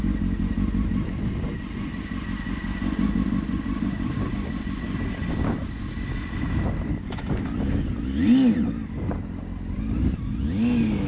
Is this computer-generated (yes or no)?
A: no